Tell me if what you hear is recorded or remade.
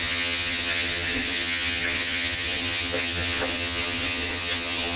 remade